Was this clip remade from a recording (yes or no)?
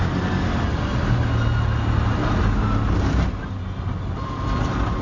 no